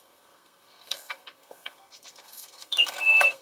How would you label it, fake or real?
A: fake